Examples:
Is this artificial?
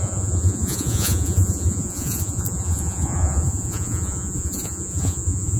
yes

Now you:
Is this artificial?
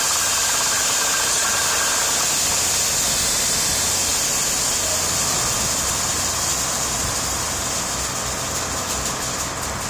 no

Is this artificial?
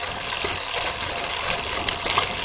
no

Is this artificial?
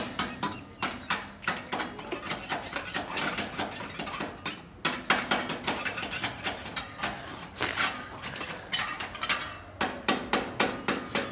no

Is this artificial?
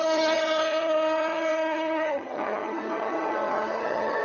yes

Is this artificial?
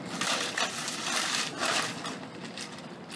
no